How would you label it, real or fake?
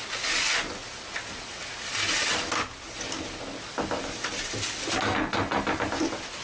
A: real